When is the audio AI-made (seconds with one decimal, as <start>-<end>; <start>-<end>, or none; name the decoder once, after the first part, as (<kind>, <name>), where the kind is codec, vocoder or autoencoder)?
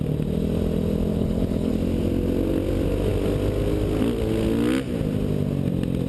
1.1-1.7 (codec, HILCodec)